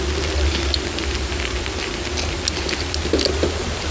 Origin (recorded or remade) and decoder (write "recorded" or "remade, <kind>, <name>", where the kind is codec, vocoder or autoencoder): recorded